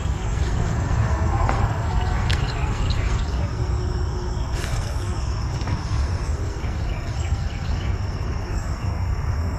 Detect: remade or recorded remade